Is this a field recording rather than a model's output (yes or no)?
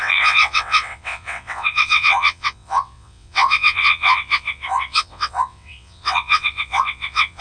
no